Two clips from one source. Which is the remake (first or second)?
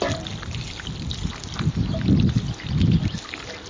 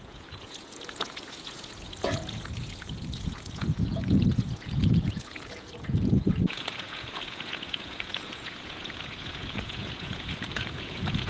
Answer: second